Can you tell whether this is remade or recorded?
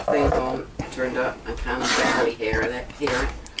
recorded